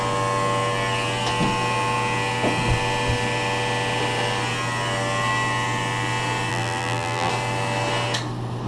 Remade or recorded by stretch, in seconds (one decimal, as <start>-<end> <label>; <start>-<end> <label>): 0.0-6.5 recorded; 6.5-7.3 remade; 7.3-8.7 recorded